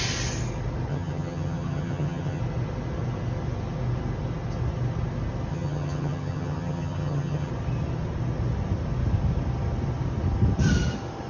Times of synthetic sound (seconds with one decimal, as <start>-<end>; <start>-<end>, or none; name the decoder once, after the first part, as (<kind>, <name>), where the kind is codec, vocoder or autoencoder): 0.9-2.4 (vocoder, HiFi-GAN); 5.5-7.5